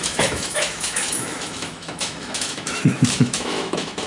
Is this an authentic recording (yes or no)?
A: no